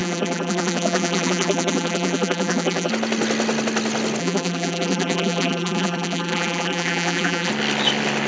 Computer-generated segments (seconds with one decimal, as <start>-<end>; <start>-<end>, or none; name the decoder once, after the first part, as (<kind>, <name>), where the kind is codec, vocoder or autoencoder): 0.0-2.9 (vocoder, BigVGAN v2); 4.2-7.5